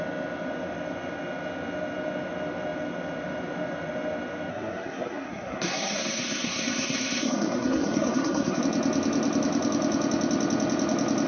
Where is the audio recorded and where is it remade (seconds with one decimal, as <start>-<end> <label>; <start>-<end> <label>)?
0.0-4.5 recorded; 4.5-8.6 remade; 8.6-11.3 recorded